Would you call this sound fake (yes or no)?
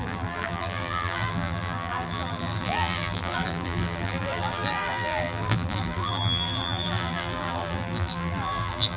yes